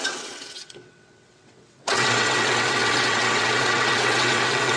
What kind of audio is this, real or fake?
fake